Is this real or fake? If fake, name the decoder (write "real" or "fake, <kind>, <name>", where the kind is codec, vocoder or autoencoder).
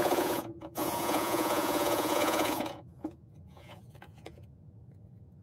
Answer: fake, vocoder, Vocos